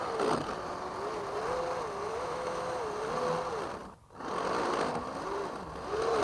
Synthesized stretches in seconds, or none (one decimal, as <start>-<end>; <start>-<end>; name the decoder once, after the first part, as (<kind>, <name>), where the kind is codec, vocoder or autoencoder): 2.1-2.8 (autoencoder, DAC-VAE)